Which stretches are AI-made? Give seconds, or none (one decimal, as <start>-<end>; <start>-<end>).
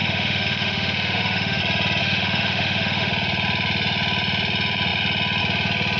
0.0-1.6; 2.0-3.1